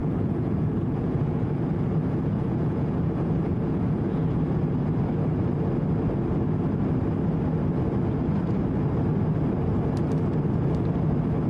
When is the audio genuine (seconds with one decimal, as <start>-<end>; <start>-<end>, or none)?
4.3-11.5